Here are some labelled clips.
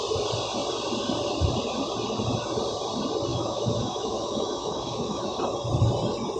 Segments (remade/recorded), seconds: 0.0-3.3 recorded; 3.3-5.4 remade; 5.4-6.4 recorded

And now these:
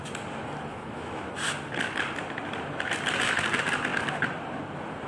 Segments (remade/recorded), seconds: 0.0-0.7 recorded; 0.7-1.3 remade; 1.3-5.1 recorded

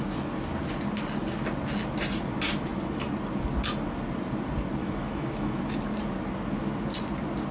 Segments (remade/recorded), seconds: 0.0-4.8 recorded; 4.8-5.6 remade; 5.6-7.5 recorded